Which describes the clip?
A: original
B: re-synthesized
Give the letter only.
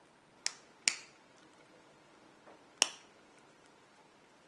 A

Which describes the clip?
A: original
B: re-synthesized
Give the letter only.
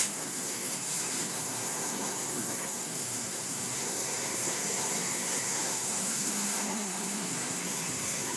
B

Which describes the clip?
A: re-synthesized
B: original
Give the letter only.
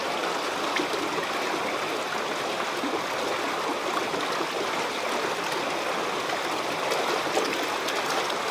B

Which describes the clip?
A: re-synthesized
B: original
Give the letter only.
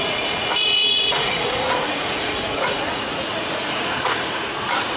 A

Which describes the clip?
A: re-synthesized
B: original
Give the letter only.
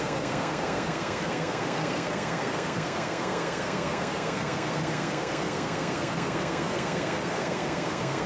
A